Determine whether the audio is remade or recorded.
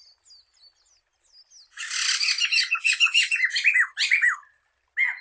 recorded